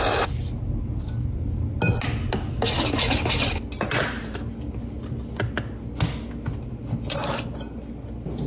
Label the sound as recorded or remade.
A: recorded